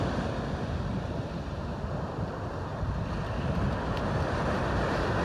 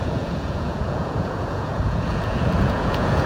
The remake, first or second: second